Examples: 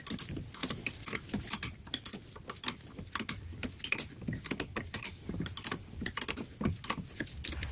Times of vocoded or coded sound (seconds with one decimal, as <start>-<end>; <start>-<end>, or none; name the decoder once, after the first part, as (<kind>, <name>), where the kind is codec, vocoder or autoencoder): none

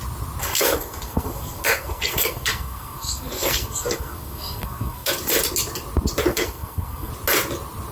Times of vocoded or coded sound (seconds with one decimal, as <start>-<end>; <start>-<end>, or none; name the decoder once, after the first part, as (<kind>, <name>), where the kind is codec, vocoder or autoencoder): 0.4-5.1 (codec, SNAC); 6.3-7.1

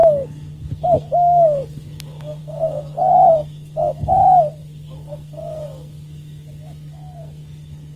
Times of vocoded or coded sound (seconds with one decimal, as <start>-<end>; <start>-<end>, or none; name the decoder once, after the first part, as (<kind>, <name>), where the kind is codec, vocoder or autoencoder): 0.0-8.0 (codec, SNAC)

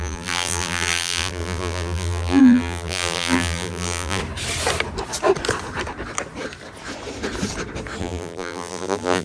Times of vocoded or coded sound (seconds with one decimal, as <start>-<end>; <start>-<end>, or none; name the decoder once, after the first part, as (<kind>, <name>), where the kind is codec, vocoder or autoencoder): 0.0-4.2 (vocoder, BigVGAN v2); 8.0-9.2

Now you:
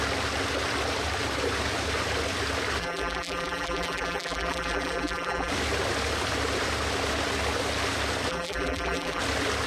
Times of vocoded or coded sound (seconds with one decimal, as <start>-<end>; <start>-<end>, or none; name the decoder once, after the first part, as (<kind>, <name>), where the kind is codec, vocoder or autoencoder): 2.8-5.5 (vocoder, BigVGAN v2); 8.3-9.2